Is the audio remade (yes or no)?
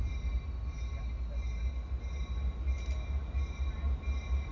no